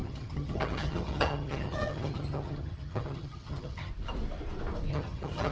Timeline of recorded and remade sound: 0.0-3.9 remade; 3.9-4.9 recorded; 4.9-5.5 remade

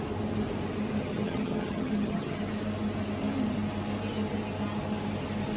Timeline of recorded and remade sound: 0.0-1.0 recorded; 1.0-2.4 remade; 2.4-5.6 recorded

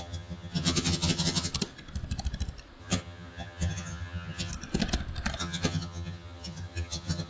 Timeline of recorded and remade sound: 0.0-1.5 remade; 1.5-2.8 recorded; 2.8-4.5 remade; 4.5-5.4 recorded; 5.4-7.3 remade

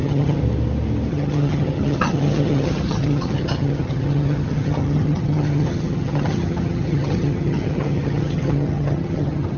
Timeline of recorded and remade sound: 0.0-0.4 remade; 0.4-1.1 recorded; 1.1-9.6 remade

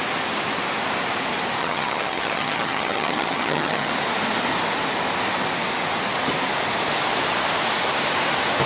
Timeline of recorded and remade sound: 0.0-1.6 recorded; 1.6-3.9 remade; 3.9-8.7 recorded

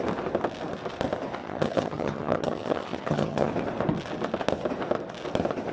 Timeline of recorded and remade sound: 0.0-1.4 recorded; 1.4-3.5 remade; 3.5-5.7 recorded